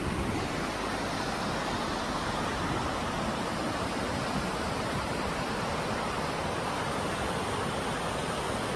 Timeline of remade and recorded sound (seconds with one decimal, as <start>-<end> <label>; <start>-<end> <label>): 0.0-0.9 recorded; 0.9-5.7 remade; 5.7-8.8 recorded